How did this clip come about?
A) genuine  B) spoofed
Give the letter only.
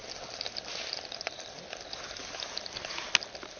A